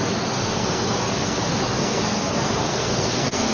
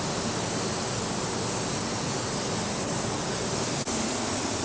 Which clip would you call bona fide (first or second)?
second